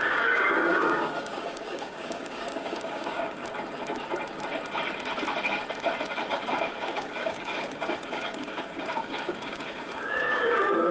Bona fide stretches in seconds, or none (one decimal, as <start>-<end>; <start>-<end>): 3.4-6.2